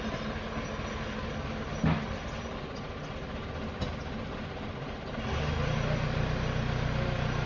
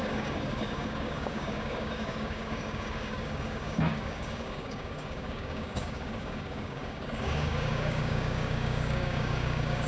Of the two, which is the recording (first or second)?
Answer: first